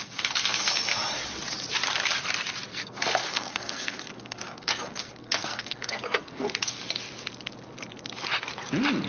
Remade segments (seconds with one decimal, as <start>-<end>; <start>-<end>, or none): 0.0-0.7; 2.7-6.8